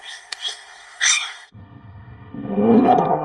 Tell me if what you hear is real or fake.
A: fake